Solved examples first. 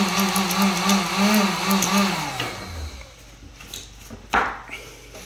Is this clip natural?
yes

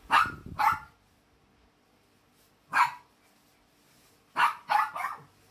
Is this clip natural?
yes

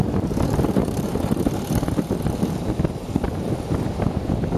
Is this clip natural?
no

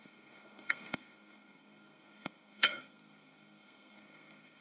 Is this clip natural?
no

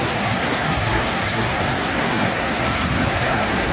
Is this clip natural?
no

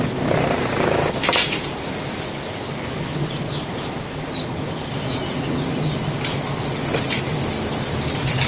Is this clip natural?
yes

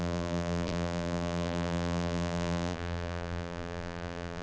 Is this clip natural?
no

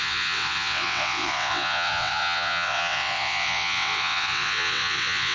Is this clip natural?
no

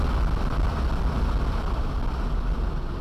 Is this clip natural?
yes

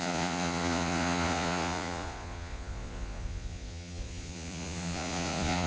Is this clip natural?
no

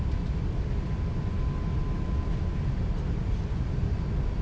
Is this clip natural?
yes